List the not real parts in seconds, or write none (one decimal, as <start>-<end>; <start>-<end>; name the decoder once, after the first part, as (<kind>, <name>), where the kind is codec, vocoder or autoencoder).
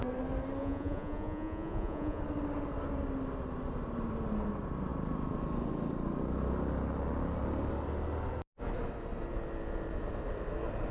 0.6-2.2 (vocoder, Vocos)